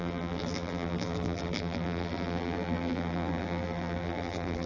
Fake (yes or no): yes